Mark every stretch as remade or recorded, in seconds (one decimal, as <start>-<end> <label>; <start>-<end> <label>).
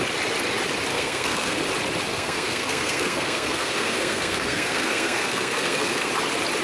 0.0-0.9 recorded; 0.9-1.6 remade; 1.6-2.1 recorded; 2.1-6.1 remade; 6.1-6.6 recorded